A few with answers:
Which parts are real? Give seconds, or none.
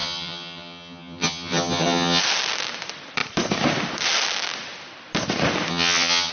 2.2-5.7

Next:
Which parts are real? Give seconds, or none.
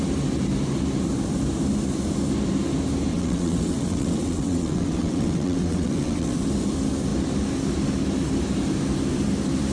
0.0-3.1; 6.4-9.7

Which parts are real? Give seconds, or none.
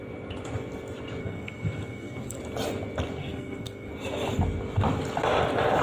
0.0-1.2; 2.4-3.2; 3.9-5.8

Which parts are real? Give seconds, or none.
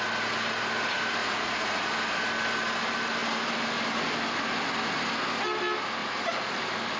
0.0-1.2; 1.9-6.0; 6.6-7.0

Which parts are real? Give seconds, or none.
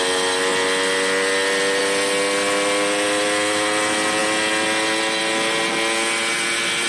0.0-6.9